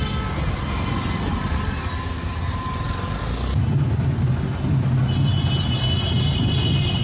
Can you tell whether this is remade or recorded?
recorded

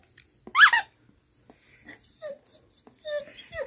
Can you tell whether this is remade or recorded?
recorded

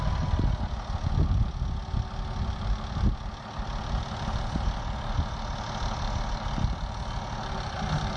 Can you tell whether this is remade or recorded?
recorded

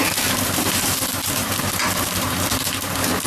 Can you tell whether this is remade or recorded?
remade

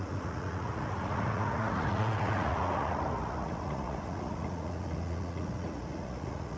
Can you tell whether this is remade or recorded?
remade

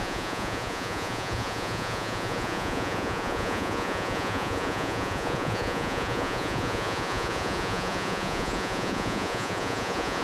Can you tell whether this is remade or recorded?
remade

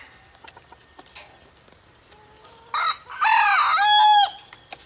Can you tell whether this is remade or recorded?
recorded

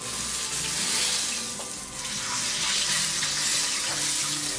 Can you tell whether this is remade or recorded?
recorded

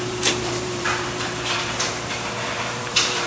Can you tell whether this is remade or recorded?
remade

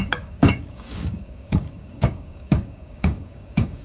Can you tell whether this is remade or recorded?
remade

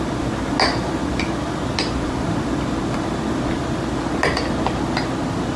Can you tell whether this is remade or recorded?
recorded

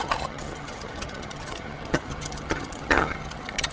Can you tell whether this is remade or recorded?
remade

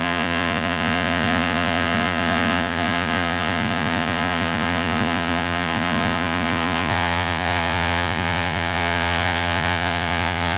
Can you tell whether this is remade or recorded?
remade